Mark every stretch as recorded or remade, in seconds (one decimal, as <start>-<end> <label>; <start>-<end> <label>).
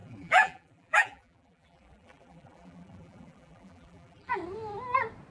0.0-4.4 remade; 4.4-5.3 recorded